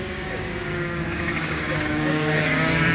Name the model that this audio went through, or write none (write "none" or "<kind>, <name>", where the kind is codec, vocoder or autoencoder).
codec, DAC